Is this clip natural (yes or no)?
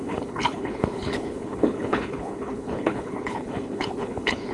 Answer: no